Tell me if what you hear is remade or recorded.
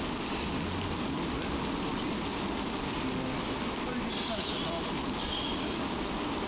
recorded